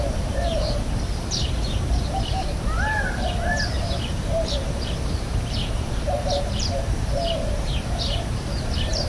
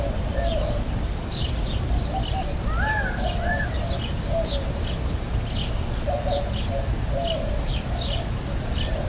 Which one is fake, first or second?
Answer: first